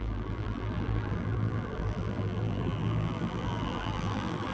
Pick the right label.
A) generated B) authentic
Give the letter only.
A